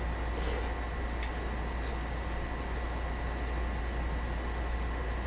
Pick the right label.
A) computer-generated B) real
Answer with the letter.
B